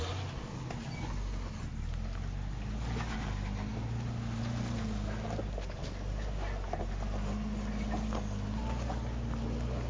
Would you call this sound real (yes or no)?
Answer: yes